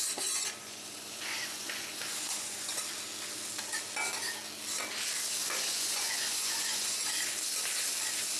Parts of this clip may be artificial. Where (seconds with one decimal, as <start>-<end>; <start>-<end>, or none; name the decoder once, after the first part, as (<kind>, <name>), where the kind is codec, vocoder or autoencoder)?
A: 0.0-2.8 (vocoder, Vocos); 5.4-7.1